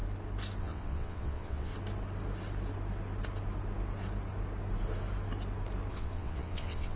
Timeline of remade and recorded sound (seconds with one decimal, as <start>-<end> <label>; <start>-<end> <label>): 0.0-0.6 recorded; 0.6-1.7 remade; 1.7-5.9 recorded; 5.9-7.0 remade